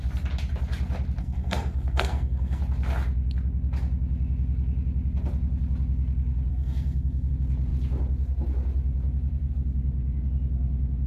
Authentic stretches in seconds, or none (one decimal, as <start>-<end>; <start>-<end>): 0.0-1.2; 2.6-6.5; 7.3-11.1